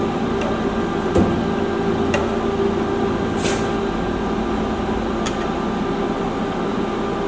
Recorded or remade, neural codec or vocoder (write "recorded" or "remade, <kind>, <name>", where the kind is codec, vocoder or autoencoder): recorded